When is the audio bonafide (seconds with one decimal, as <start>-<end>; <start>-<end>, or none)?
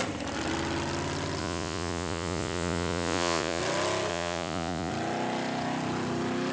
0.0-1.4; 3.6-4.1; 4.9-6.5